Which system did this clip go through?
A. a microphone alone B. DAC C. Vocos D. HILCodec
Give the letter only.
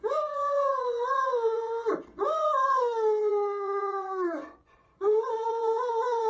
C